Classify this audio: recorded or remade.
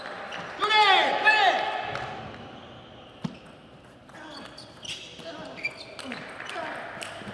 recorded